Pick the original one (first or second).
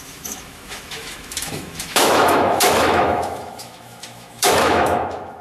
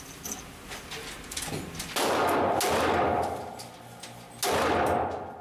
second